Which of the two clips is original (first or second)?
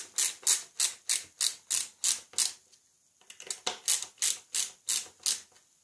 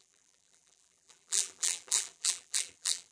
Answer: first